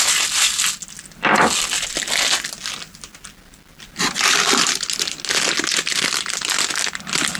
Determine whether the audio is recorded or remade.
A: recorded